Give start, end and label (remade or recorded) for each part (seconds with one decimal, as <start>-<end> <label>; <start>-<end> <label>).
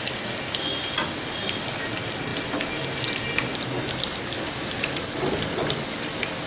0.0-2.3 recorded; 2.3-4.9 remade; 4.9-6.5 recorded